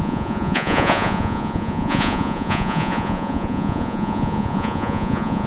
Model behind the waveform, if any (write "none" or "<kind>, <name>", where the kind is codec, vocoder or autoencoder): vocoder, Vocos